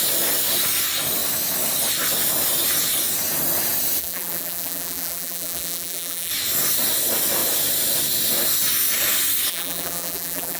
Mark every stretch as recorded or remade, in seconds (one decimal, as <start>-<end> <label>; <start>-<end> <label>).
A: 0.0-4.0 recorded; 4.0-6.3 remade; 6.3-9.5 recorded; 9.5-10.6 remade